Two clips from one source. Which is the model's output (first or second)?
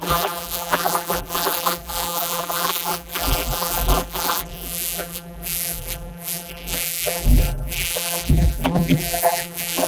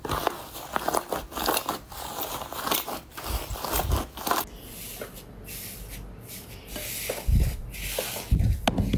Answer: first